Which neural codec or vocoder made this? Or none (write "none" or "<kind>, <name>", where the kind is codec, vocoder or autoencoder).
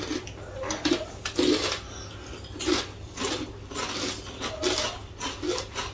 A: none